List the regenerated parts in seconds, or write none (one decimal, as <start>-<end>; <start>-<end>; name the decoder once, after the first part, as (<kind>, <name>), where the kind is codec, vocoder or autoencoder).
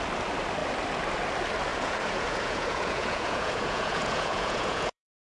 1.7-5.3 (vocoder, Vocos)